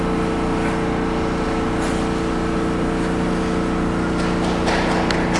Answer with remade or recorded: recorded